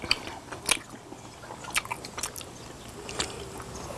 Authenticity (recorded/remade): recorded